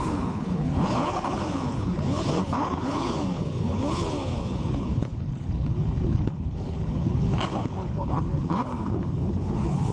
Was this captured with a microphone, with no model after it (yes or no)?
no